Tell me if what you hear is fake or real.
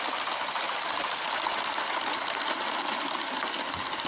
real